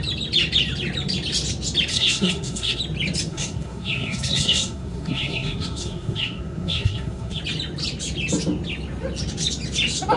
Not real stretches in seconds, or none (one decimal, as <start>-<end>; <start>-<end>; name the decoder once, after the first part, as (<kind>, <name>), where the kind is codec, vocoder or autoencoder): 1.9-2.8 (codec, SNAC); 3.3-7.4